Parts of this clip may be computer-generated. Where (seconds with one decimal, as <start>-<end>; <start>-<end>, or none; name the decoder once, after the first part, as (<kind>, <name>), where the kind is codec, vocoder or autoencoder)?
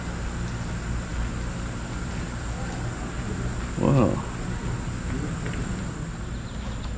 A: none